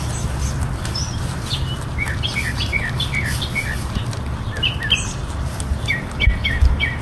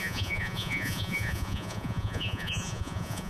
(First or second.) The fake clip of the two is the second